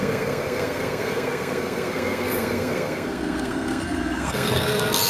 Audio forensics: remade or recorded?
remade